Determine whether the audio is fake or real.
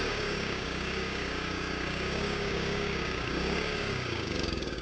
fake